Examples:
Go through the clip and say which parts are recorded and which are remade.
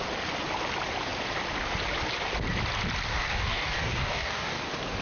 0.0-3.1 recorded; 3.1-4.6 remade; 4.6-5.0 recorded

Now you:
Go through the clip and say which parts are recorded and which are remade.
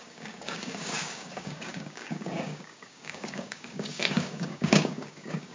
0.0-5.5 remade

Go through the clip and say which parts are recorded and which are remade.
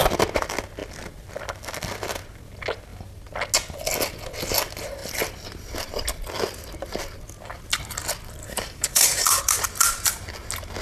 0.0-8.4 recorded; 8.4-9.4 remade; 9.4-10.8 recorded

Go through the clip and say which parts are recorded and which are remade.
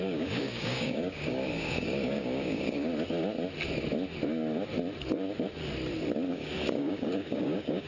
0.0-2.9 remade; 2.9-6.3 recorded; 6.3-7.9 remade